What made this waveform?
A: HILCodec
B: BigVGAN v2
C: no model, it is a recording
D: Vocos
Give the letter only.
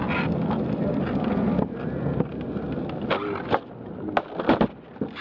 C